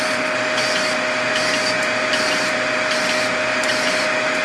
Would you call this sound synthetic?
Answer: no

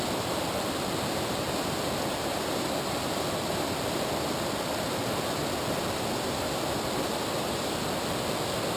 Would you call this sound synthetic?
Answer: no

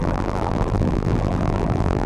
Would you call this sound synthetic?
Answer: yes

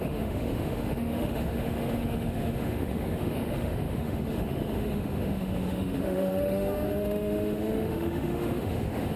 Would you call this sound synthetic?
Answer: yes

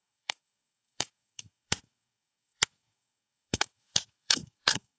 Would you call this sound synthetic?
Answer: yes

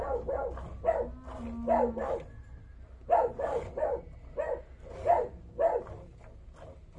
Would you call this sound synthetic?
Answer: no